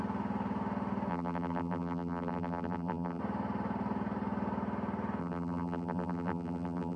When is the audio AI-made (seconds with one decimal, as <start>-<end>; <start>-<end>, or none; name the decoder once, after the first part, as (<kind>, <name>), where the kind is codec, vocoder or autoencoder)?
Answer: 1.1-3.2 (vocoder, BigVGAN v2); 5.2-7.0